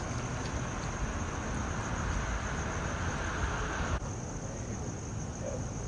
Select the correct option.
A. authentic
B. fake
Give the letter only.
A